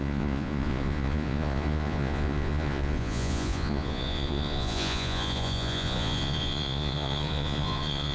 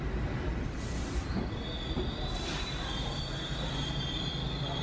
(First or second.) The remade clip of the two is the first